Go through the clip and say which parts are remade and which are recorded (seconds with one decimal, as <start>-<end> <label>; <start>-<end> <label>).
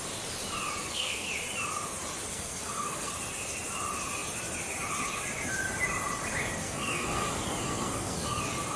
0.0-0.8 recorded; 0.8-1.3 remade; 1.3-2.3 recorded; 2.3-3.1 remade; 3.1-6.6 recorded; 6.6-8.4 remade; 8.4-8.8 recorded